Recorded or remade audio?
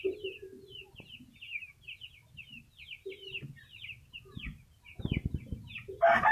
recorded